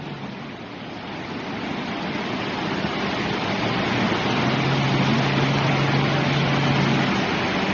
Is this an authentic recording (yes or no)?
yes